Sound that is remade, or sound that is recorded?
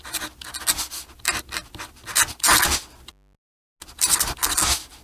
recorded